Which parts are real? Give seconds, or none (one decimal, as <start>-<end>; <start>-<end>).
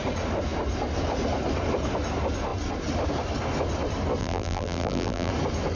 0.0-4.2; 5.3-5.8